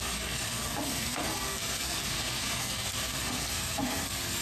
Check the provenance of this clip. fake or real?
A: fake